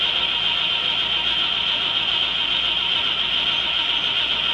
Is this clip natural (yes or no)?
yes